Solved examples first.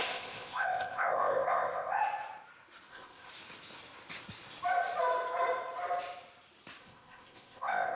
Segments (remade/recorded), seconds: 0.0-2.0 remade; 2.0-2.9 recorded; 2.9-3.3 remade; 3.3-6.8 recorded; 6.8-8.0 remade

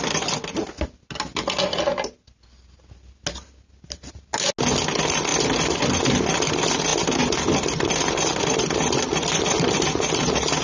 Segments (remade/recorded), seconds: 0.0-10.6 recorded